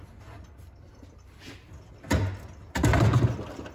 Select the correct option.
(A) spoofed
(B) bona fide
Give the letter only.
B